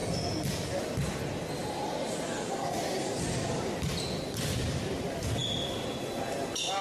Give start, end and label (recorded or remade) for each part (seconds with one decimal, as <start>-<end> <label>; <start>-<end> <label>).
0.0-6.8 recorded